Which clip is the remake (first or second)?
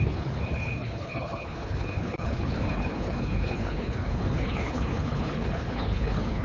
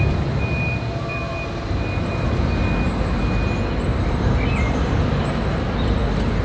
first